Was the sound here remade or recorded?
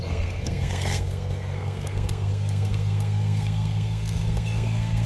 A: remade